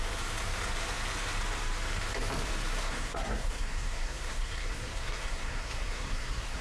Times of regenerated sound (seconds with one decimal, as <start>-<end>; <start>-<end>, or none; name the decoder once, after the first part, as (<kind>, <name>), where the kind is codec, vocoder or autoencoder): 2.8-6.6 (codec, SNAC)